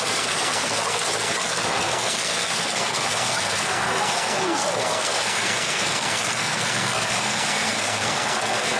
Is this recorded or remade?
remade